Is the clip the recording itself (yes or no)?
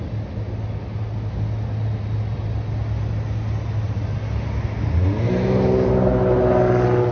yes